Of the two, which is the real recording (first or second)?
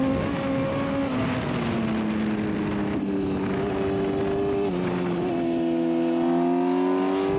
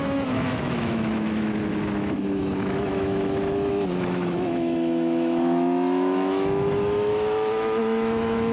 first